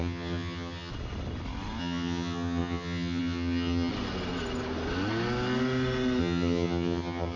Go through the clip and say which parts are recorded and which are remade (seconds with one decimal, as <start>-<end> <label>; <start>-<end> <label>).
0.0-0.9 remade; 0.9-1.8 recorded; 1.8-3.9 remade; 3.9-6.2 recorded; 6.2-7.4 remade